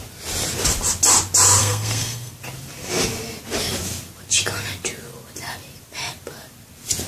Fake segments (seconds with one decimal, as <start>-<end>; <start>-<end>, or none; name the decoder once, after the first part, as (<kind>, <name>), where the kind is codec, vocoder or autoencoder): 1.6-2.3 (codec, SNAC)